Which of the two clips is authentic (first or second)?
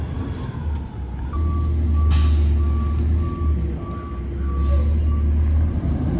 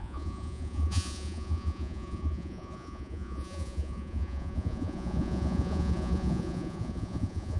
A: first